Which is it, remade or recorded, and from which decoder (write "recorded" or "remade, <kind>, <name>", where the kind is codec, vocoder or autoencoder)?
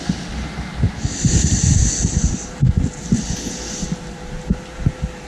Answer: recorded